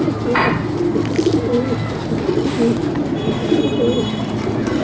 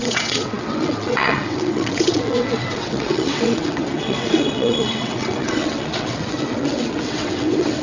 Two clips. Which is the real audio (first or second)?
first